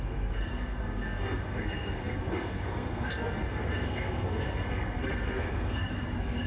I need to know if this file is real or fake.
fake